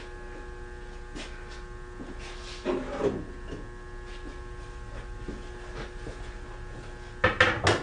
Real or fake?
real